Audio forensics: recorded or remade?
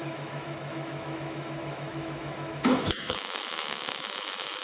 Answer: remade